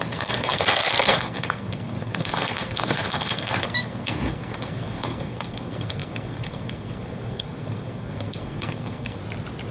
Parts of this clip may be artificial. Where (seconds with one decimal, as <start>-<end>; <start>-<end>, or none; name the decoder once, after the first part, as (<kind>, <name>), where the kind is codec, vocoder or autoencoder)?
0.0-9.2 (codec, SNAC)